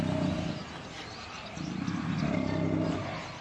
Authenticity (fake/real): real